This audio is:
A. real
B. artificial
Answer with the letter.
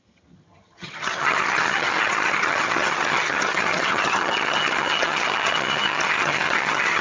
B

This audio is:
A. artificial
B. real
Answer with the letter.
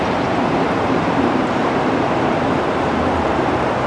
A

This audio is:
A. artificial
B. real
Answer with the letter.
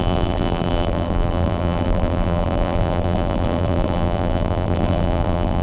A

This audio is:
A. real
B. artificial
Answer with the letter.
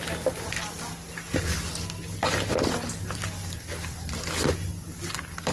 A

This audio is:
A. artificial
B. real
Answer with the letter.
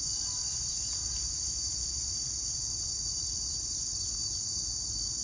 A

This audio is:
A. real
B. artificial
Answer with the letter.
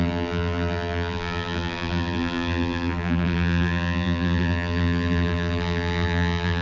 B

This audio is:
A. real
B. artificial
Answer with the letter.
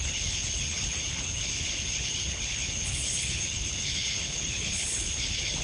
B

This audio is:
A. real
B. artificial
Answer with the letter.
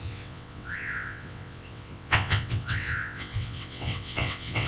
B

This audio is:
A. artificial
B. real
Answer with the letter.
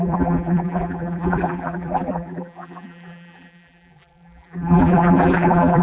A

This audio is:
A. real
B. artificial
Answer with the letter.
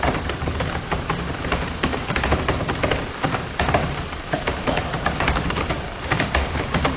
B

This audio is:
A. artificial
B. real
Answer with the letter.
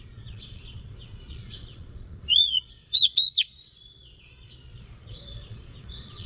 A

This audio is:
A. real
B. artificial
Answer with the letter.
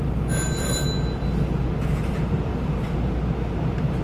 A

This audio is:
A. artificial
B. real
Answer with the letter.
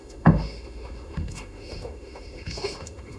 A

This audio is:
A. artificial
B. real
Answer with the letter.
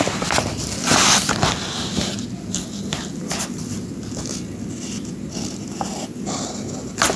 B